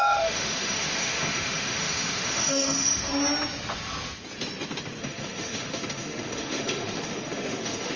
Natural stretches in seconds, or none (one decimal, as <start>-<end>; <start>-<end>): 3.1-5.0